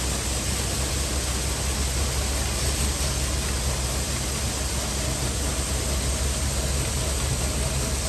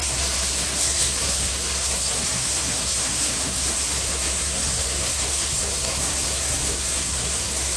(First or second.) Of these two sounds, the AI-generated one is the second